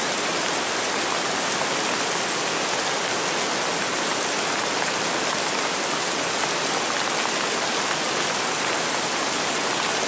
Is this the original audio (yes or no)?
yes